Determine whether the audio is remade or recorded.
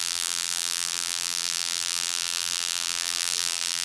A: remade